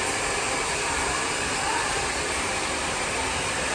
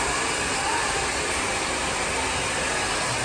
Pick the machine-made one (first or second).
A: first